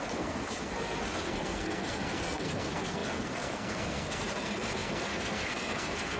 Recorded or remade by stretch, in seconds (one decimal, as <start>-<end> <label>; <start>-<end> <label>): 0.0-6.2 remade